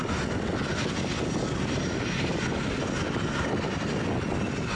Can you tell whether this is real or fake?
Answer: real